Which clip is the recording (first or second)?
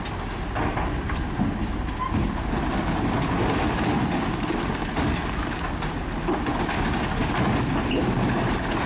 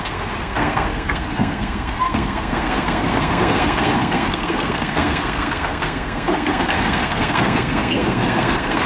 first